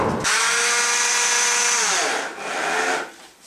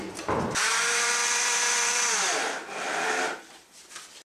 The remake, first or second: second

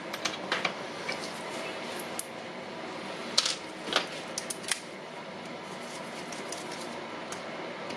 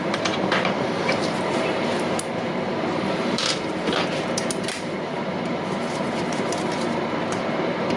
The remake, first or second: second